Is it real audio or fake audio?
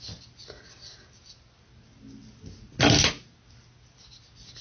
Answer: real